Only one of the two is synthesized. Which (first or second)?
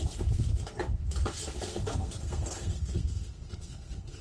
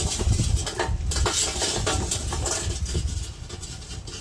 first